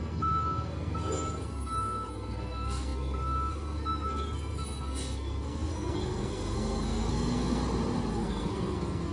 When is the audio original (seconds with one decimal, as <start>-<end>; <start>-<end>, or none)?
7.6-8.1